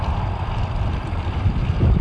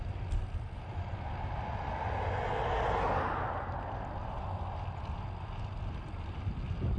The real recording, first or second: second